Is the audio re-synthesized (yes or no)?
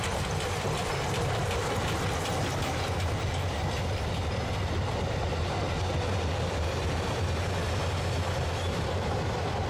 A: no